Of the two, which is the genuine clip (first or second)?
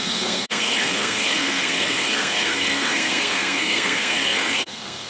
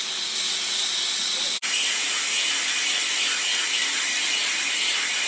second